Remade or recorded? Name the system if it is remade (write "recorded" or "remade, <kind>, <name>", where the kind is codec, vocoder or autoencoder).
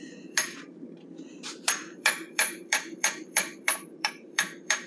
remade, vocoder, BigVGAN v2